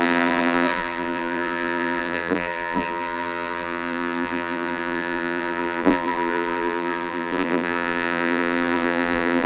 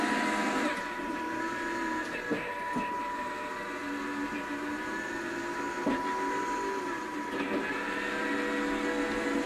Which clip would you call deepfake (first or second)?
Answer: first